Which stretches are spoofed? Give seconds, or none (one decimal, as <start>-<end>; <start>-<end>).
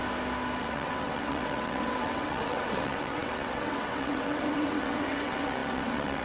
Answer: 0.6-6.2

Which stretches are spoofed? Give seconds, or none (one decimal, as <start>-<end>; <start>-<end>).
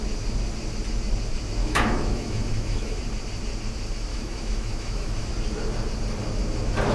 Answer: 1.6-3.0; 4.1-5.3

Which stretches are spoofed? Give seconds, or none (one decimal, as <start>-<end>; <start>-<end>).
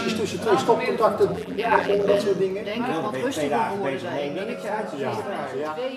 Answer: 1.3-2.2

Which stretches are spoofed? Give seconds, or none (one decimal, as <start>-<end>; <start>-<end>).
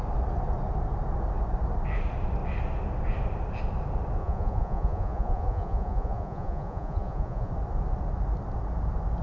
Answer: 4.2-7.5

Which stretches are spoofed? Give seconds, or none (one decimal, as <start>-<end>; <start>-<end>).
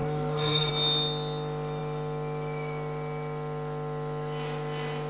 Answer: 0.0-0.7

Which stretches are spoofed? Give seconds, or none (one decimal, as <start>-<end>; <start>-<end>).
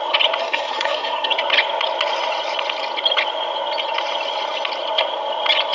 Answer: 0.4-1.3